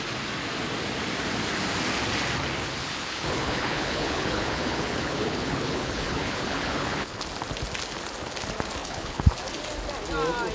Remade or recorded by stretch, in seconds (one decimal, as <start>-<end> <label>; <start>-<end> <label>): 0.0-2.8 recorded; 2.8-7.2 remade; 7.2-8.8 recorded; 8.8-9.4 remade; 9.4-10.5 recorded